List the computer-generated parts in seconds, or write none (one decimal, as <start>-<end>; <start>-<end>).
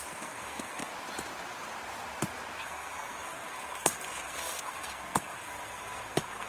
0.0-0.9; 2.6-6.5